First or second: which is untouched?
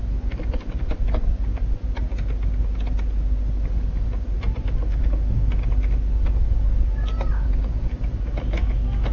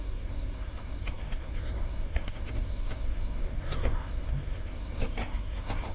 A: first